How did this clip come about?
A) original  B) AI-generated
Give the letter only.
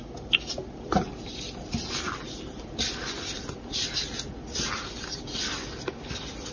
A